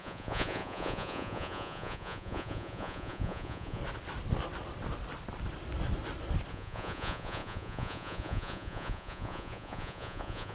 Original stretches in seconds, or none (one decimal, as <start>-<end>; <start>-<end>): 3.8-6.5